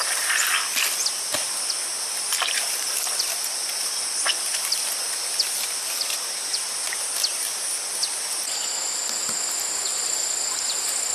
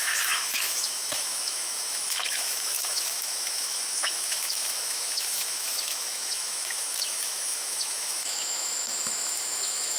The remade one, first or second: second